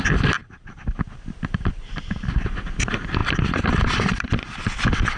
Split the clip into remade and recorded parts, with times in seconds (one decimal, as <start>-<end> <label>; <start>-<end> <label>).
0.0-0.4 recorded; 0.4-2.1 remade; 2.1-3.2 recorded; 3.2-4.8 remade; 4.8-5.2 recorded